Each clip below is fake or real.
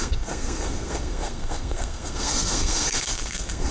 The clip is fake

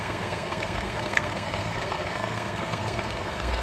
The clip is fake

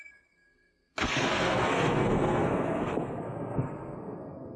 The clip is fake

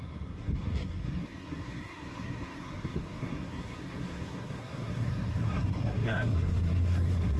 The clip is fake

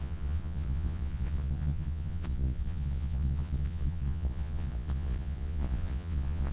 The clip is fake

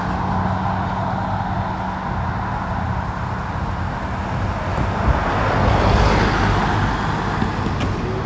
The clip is real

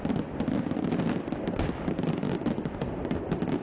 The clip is real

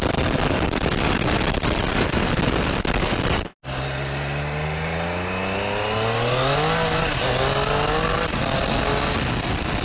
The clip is real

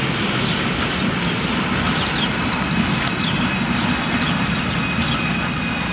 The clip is real